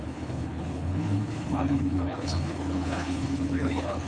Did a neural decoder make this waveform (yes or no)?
yes